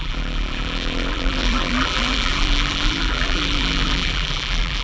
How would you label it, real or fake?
fake